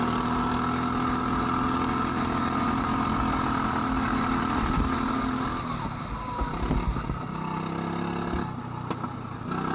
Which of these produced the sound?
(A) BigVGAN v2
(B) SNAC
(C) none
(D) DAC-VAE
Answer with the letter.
C